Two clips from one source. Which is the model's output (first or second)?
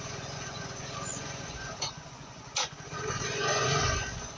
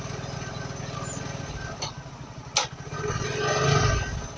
first